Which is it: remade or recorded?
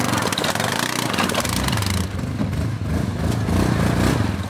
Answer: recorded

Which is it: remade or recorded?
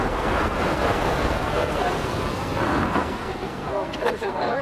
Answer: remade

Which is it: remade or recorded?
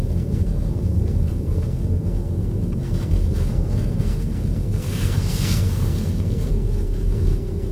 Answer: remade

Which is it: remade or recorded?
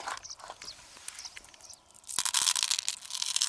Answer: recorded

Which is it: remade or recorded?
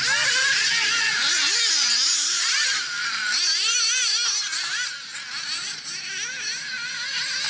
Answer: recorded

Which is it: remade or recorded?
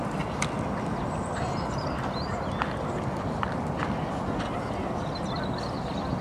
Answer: recorded